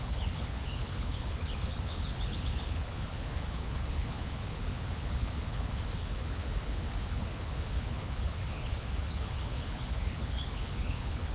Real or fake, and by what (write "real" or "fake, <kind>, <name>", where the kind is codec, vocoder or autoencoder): fake, codec, HILCodec